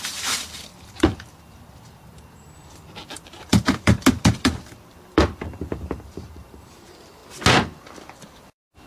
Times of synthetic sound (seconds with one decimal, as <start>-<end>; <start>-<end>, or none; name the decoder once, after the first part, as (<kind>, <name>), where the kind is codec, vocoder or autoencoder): 0.0-7.2 (vocoder, BigVGAN v2); 7.8-8.9